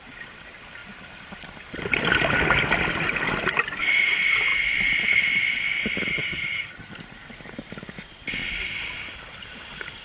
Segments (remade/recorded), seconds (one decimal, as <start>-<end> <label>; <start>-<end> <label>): 0.0-6.1 recorded; 6.1-6.9 remade; 6.9-10.0 recorded